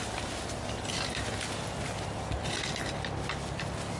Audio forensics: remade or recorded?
recorded